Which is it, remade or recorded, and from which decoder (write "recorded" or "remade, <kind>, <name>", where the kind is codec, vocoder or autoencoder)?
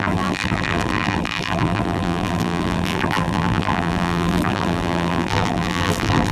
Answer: remade, vocoder, BigVGAN v2